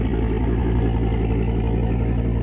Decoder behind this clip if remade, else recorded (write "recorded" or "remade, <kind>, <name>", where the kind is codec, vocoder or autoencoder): recorded